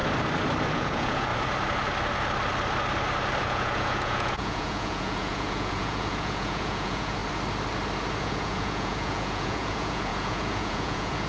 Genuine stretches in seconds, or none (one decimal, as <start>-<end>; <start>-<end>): 0.0-0.7; 1.3-3.4; 7.2-8.2

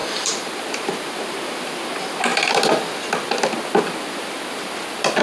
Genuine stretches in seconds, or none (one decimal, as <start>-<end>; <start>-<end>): 1.8-5.2